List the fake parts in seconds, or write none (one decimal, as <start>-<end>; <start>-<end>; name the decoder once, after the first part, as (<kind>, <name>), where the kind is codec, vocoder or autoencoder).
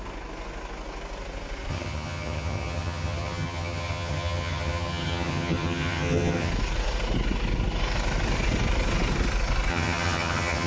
1.7-6.5 (vocoder, HiFi-GAN); 9.7-10.7